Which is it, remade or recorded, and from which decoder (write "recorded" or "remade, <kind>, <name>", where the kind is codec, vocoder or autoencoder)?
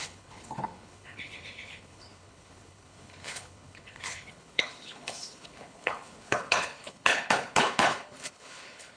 remade, codec, HILCodec